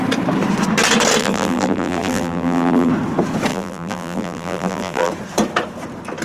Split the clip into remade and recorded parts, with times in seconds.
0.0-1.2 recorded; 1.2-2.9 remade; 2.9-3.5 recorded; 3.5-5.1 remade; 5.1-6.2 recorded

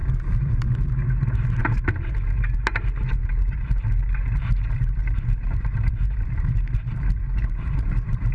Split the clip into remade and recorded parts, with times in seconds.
0.0-0.9 remade; 0.9-3.2 recorded; 3.2-8.3 remade

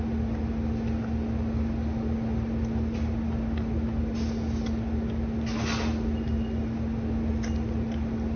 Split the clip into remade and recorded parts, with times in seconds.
0.0-8.4 recorded

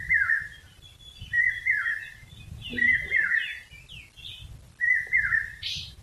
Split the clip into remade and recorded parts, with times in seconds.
0.0-3.5 remade; 3.5-5.1 recorded; 5.1-6.0 remade

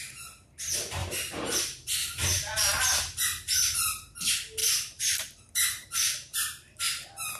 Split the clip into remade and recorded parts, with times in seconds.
0.0-1.0 recorded; 1.0-1.6 remade; 1.6-2.0 recorded; 2.0-2.8 remade; 2.8-4.6 recorded; 4.6-6.8 remade; 6.8-7.4 recorded